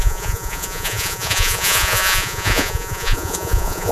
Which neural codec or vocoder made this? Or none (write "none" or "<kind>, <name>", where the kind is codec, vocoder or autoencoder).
vocoder, Vocos